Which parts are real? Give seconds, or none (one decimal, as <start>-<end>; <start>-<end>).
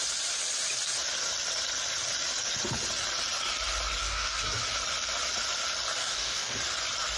0.0-4.0; 4.6-6.0; 6.6-7.2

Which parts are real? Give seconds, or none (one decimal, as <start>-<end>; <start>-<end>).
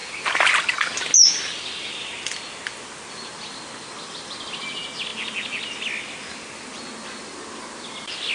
0.0-8.3